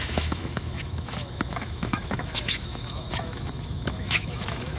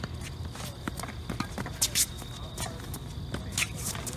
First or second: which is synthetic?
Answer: first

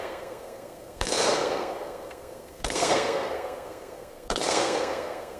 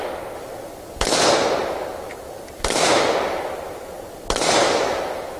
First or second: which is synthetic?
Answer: first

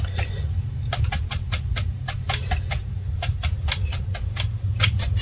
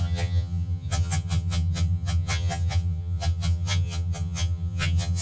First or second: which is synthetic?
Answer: second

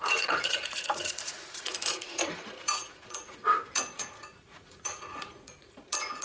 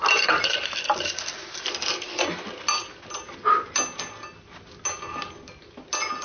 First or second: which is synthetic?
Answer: first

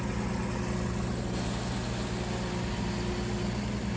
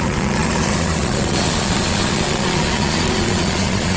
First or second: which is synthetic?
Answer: second